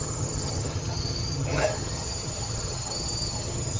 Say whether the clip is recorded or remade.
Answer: remade